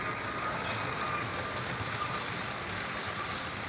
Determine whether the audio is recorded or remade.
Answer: recorded